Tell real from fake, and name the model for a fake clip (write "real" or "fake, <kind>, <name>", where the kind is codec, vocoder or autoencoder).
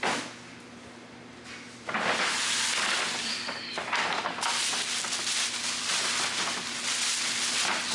real